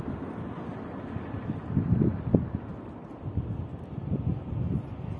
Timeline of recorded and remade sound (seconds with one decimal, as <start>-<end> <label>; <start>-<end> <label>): 0.0-5.2 recorded